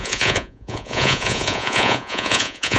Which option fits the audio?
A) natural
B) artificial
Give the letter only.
B